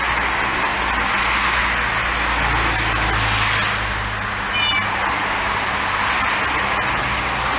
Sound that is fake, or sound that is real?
real